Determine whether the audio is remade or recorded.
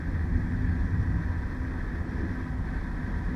recorded